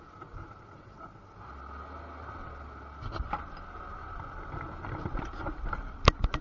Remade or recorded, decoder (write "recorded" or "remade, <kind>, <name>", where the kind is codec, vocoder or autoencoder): recorded